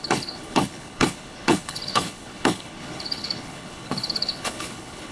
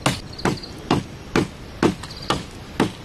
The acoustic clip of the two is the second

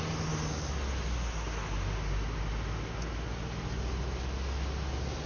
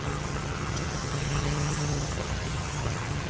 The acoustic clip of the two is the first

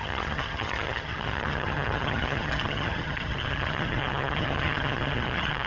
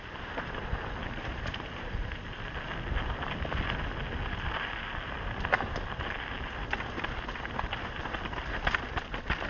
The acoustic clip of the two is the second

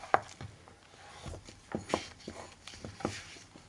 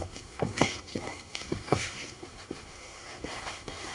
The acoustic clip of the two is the first